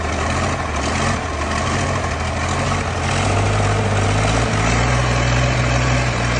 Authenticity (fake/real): real